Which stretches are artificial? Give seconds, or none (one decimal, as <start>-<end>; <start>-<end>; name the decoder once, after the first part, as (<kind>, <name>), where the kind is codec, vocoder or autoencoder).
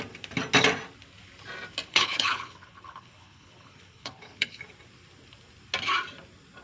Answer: 1.9-4.6 (codec, HILCodec)